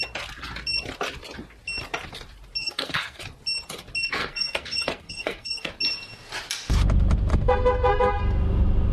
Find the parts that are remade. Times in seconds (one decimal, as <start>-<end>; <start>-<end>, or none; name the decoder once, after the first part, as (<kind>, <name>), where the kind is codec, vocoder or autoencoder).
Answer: 2.6-3.2 (codec, SNAC); 4.2-5.7; 7.3-8.2